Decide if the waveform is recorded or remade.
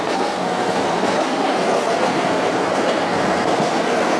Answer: remade